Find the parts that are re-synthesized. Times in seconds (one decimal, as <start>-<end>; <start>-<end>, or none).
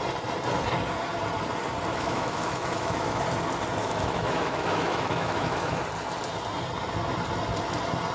1.9-3.2; 3.8-5.8